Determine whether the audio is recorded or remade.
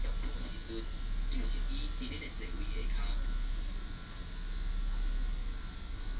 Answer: recorded